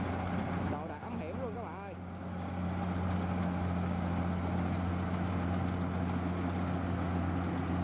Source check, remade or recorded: recorded